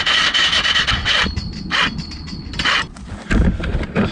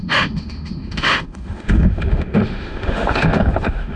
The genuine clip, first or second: first